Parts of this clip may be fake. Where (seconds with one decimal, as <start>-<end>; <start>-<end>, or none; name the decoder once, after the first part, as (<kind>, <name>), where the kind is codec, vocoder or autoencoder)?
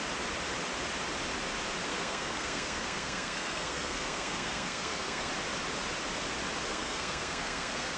1.9-5.3 (codec, SNAC); 6.7-8.0